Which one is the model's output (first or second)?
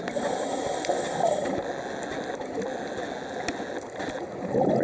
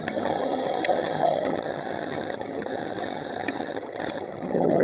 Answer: second